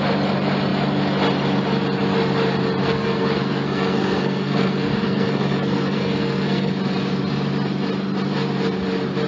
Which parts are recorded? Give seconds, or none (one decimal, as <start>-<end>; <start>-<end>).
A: 0.0-2.8; 6.7-9.3